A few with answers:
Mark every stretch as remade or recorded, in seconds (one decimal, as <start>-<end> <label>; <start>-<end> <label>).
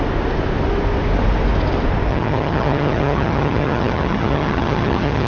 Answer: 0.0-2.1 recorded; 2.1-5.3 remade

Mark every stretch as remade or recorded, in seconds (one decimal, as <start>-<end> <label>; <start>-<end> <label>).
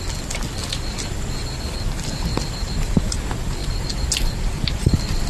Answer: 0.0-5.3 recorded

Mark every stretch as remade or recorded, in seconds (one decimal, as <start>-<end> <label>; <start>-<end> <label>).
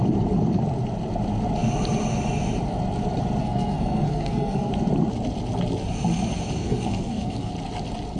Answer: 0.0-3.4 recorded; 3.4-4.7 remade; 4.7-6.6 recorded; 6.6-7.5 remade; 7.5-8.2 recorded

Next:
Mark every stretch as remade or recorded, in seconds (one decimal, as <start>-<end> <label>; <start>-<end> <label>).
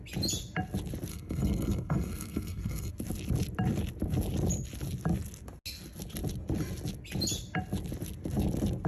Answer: 0.0-1.1 recorded; 1.1-2.9 remade; 2.9-8.9 recorded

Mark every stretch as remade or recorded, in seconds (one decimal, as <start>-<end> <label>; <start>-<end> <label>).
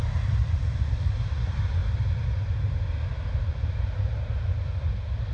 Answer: 0.0-0.4 recorded; 0.4-1.3 remade; 1.3-5.3 recorded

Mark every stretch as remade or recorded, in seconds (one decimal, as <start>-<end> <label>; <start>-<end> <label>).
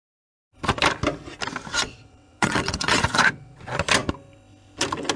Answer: 0.0-1.7 recorded; 1.7-3.6 remade; 3.6-5.2 recorded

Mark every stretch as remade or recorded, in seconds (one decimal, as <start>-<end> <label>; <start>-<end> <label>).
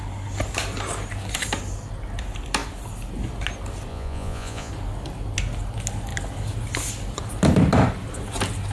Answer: 0.0-3.9 recorded; 3.9-4.7 remade; 4.7-8.7 recorded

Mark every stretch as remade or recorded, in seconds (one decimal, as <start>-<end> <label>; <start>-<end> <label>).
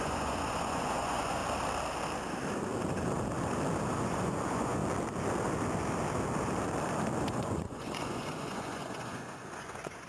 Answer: 0.0-1.4 remade; 1.4-4.0 recorded; 4.0-4.8 remade; 4.8-7.3 recorded; 7.3-10.1 remade